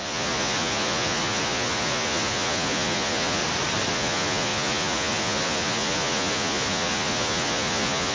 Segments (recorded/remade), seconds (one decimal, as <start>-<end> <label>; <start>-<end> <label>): 0.0-3.4 remade; 3.4-3.9 recorded; 3.9-8.1 remade